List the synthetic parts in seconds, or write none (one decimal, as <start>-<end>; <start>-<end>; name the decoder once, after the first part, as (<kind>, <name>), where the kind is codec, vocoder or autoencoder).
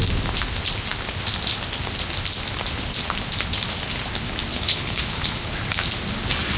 4.5-5.5 (codec, HILCodec)